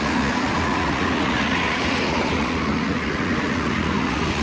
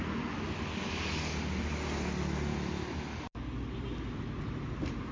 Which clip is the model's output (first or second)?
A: first